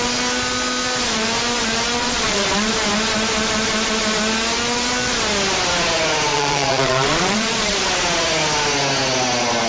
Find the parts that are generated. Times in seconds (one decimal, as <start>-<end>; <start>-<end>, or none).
2.0-2.7; 6.3-7.9